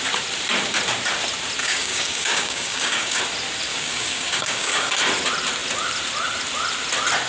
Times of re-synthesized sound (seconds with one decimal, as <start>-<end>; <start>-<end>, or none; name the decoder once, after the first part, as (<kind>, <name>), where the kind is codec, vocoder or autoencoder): 1.6-3.2 (codec, DAC); 3.7-4.9